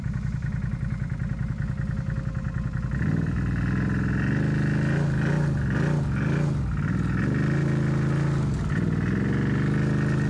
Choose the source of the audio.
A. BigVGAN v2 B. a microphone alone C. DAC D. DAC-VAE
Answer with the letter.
B